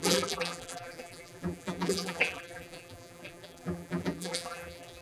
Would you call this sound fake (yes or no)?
yes